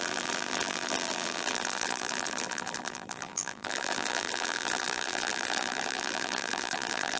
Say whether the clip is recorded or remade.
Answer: remade